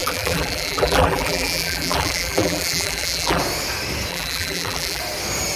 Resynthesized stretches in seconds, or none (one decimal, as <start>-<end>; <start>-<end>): 0.0-3.4; 4.1-5.0